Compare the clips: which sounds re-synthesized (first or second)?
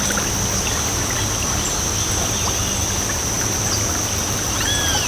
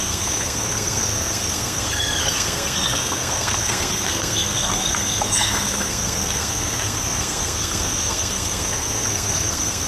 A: second